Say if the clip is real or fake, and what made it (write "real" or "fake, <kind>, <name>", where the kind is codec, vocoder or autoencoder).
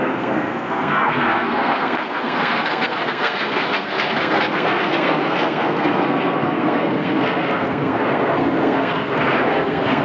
fake, codec, SNAC